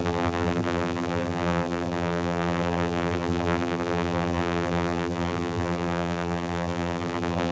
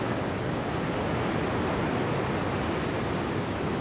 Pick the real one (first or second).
second